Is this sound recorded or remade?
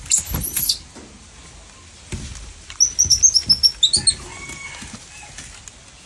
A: recorded